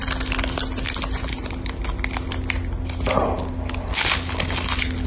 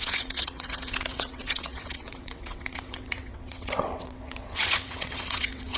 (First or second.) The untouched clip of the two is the first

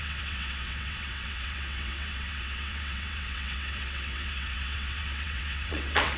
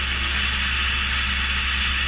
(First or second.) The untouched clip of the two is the second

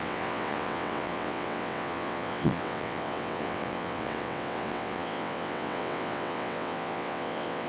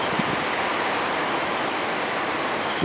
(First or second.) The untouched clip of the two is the second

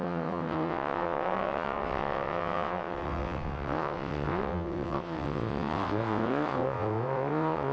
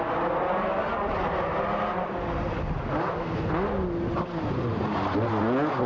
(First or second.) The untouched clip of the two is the second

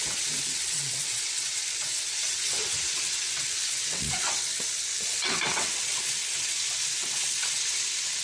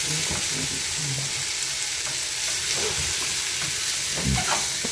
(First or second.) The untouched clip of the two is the second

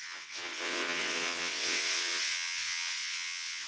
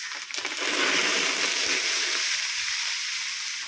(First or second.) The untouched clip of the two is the second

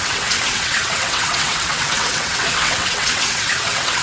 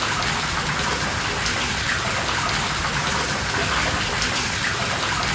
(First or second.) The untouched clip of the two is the second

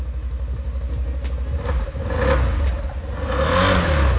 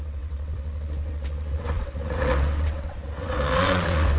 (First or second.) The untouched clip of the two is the first